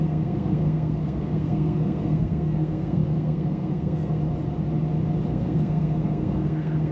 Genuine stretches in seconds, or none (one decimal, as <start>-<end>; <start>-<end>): 4.2-5.3